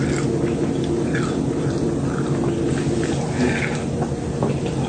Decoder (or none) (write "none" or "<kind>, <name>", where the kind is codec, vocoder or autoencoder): none